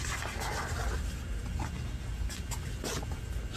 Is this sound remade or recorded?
recorded